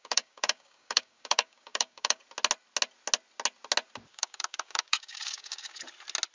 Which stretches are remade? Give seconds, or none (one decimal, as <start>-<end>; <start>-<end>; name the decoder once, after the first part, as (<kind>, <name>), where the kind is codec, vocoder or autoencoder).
0.0-2.2 (codec, DAC); 4.1-5.8